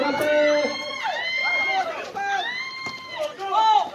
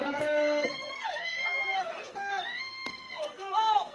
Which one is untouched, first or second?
first